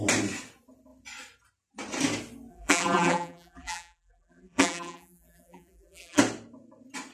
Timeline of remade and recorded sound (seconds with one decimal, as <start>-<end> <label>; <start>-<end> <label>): 0.0-2.5 recorded; 2.5-6.2 remade; 6.2-7.1 recorded